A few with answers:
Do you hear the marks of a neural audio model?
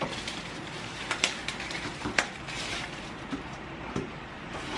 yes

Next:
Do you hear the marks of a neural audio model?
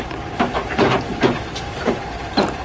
yes